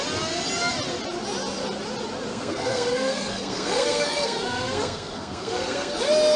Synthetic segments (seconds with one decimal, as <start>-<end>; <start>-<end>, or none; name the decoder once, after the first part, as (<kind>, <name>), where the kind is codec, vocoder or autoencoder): 2.3-6.0 (codec, SNAC)